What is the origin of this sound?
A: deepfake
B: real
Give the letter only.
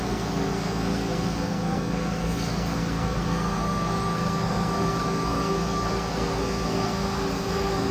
A